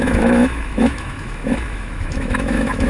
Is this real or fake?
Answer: fake